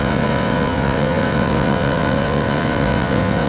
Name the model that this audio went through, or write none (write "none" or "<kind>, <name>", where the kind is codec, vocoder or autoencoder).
vocoder, WaveNeXt